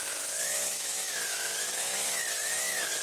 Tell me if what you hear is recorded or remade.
remade